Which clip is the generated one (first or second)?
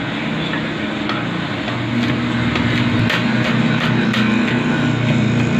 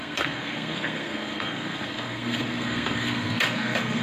second